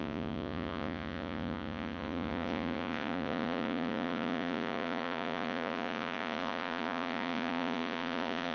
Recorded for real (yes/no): no